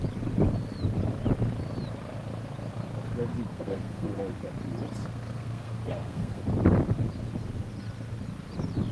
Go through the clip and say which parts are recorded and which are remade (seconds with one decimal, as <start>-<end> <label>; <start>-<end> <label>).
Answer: 0.0-3.5 recorded; 3.5-4.2 remade; 4.2-5.0 recorded; 5.0-6.4 remade; 6.4-8.9 recorded